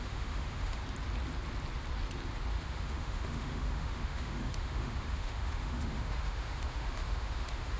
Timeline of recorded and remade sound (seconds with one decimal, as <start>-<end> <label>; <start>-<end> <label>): 0.0-0.8 remade; 0.8-2.5 recorded; 2.5-7.8 remade